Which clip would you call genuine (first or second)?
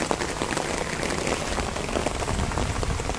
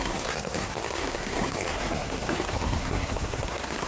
first